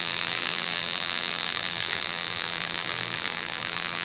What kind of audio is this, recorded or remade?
remade